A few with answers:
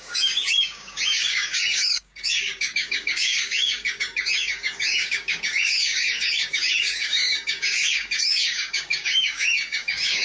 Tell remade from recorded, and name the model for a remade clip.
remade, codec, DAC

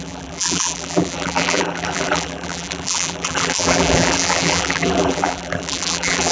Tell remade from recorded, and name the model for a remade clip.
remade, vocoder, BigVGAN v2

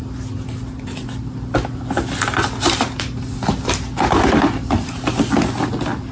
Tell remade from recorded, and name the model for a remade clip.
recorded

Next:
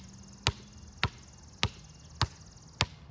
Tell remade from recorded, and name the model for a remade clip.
recorded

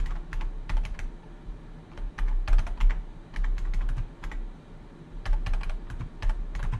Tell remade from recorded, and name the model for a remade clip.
recorded